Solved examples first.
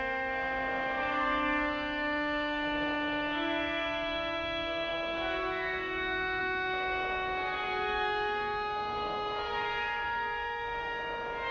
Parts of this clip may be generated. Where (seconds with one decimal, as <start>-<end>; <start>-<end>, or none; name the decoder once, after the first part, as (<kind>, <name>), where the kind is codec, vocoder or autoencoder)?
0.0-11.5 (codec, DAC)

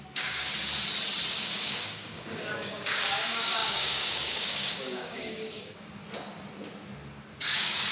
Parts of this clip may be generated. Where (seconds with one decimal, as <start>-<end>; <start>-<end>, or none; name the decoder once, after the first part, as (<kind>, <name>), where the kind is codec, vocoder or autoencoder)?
0.0-0.5 (codec, DAC); 1.3-6.0; 7.4-7.9

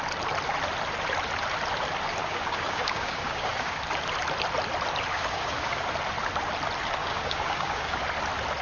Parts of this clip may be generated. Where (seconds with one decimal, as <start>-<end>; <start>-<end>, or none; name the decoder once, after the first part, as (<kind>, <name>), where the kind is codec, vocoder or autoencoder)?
2.2-3.8 (codec, DAC); 5.1-5.8; 7.0-8.0